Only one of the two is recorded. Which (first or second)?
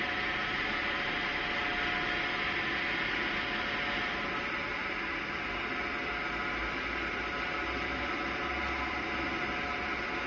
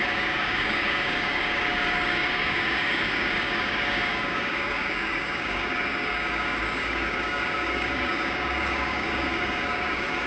first